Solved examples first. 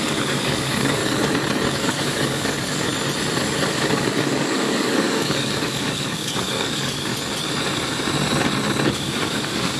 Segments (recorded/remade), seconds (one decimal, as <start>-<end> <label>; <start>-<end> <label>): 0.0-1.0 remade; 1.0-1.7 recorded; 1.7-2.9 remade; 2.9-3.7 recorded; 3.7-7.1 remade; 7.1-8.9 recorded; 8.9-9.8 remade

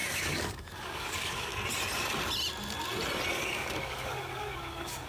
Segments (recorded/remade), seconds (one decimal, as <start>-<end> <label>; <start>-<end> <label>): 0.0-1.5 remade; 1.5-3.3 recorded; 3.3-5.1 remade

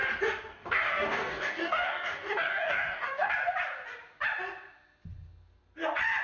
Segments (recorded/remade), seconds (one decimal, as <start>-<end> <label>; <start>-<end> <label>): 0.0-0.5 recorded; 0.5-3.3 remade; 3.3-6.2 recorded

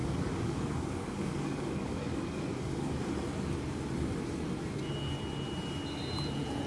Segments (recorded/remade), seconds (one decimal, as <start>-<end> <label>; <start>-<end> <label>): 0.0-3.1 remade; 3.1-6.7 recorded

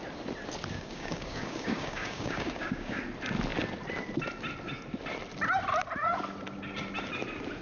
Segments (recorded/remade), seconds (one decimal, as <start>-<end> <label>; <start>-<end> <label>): 0.0-0.7 recorded; 0.7-3.0 remade; 3.0-7.6 recorded

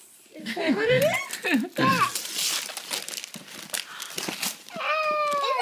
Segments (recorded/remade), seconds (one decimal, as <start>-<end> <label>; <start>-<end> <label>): 0.0-0.4 recorded; 0.4-1.0 remade; 1.0-5.6 recorded

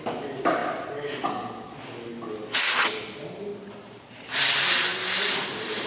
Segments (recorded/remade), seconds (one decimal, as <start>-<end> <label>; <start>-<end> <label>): 0.0-5.9 recorded